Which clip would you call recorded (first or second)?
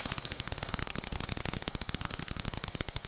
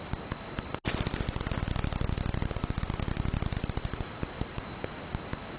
second